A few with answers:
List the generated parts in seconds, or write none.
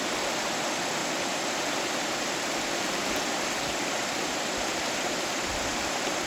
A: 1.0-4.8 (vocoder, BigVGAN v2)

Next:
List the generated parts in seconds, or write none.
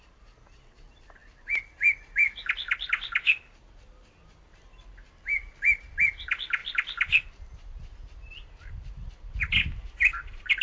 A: none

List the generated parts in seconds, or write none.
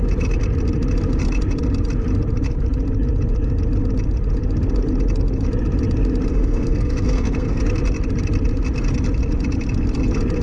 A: 6.3-7.6 (codec, SNAC)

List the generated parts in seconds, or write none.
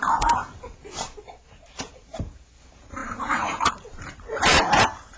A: 0.0-5.2 (vocoder, BigVGAN v2)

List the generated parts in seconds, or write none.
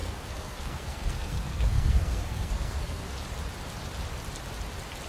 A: 0.0-3.1 (codec, SNAC)